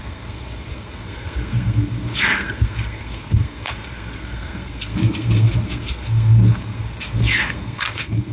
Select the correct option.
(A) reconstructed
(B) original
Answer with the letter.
A